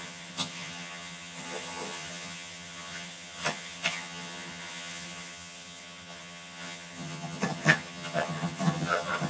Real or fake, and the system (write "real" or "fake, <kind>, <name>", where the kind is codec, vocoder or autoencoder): fake, vocoder, HiFi-GAN